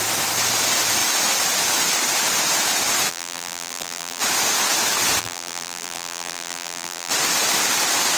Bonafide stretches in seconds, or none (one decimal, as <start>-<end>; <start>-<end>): 0.0-3.1; 4.2-5.2; 7.1-8.2